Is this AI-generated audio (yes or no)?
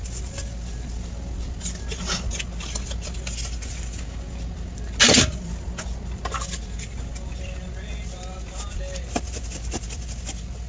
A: no